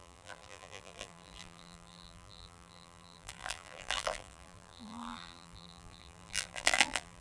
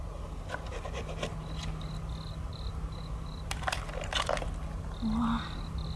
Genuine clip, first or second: second